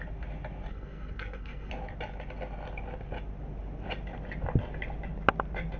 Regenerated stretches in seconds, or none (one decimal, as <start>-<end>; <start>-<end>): 0.7-1.7